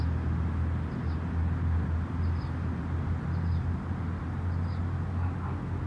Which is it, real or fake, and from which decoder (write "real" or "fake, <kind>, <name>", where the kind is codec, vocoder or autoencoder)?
real